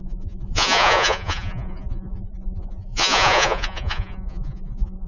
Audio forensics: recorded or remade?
remade